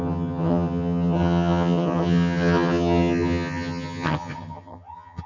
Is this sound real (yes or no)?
no